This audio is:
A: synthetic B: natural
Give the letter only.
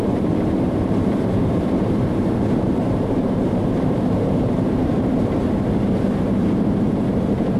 A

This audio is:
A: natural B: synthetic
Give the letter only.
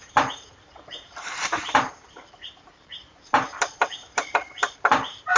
B